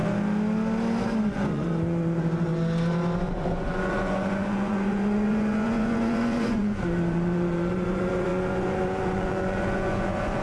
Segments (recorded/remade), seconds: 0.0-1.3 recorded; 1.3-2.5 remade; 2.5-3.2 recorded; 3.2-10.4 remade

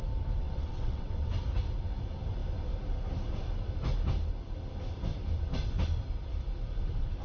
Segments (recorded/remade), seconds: 0.0-0.4 recorded; 0.4-1.3 remade; 1.3-7.2 recorded

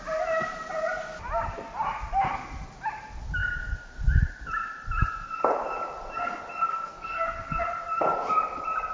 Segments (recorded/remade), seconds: 0.0-6.7 recorded; 6.7-7.6 remade; 7.6-8.9 recorded

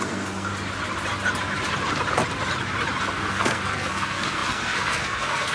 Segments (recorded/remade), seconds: 0.0-0.5 remade; 0.5-3.0 recorded; 3.0-5.5 remade

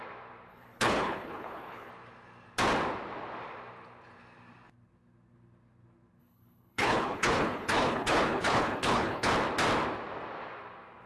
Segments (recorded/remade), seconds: 0.0-0.5 recorded; 0.5-1.9 remade; 1.9-6.2 recorded; 6.2-9.3 remade; 9.3-11.1 recorded